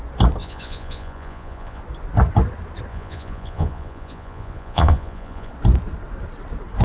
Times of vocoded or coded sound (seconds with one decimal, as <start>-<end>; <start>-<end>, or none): 0.4-1.8; 2.9-5.5